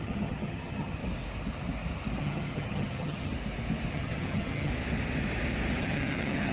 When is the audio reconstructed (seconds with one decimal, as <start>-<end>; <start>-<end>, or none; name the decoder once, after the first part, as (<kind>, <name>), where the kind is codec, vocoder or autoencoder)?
0.0-1.0 (vocoder, HiFi-GAN); 2.2-3.3; 3.9-4.7; 5.8-6.5